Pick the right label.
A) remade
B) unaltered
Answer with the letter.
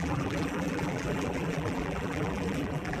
A